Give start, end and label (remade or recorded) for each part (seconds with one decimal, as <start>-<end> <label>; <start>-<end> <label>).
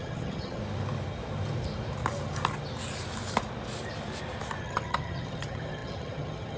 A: 0.0-0.6 remade; 0.6-4.6 recorded; 4.6-6.6 remade